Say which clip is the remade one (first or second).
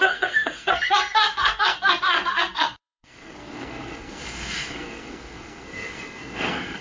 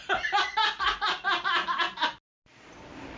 first